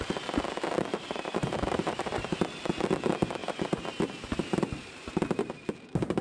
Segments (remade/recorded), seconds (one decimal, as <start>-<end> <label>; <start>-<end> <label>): 0.0-0.9 recorded; 0.9-2.4 remade; 2.4-3.4 recorded; 3.4-6.2 remade